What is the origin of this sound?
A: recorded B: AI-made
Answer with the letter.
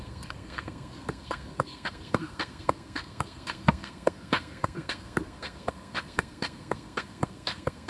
B